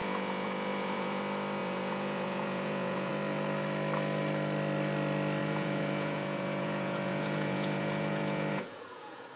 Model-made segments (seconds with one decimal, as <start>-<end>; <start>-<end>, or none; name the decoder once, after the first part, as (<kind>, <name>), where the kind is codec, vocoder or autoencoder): 0.0-1.2 (vocoder, Vocos); 1.6-3.1; 5.4-9.4